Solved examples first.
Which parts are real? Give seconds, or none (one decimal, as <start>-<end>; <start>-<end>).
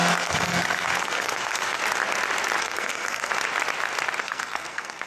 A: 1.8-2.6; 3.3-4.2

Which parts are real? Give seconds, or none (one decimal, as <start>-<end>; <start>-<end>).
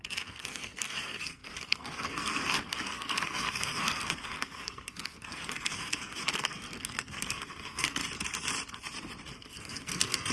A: 8.0-9.3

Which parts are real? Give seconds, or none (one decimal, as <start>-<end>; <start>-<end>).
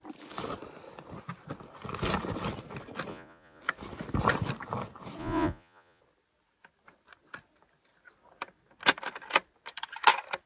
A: 0.0-3.1; 3.6-5.2; 6.0-10.5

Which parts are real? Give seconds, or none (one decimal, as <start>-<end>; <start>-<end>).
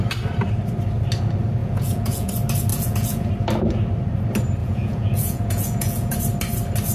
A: 0.0-1.6; 2.3-2.7; 3.3-4.6; 6.2-6.9